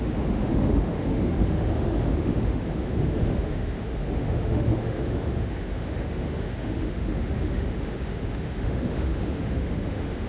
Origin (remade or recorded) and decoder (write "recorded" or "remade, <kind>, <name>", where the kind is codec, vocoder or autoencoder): remade, autoencoder, DAC-VAE